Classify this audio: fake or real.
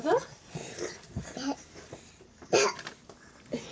fake